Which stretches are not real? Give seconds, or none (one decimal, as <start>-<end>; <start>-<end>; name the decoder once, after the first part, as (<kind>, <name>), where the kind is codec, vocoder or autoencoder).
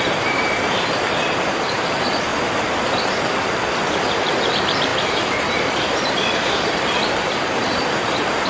0.0-2.3 (vocoder, BigVGAN v2); 3.9-8.5